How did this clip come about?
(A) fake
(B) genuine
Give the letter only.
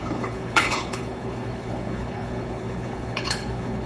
A